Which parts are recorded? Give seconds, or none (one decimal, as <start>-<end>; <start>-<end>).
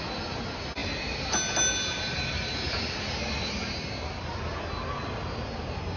0.0-6.0